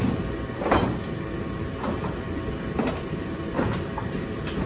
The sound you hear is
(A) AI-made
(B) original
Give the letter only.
B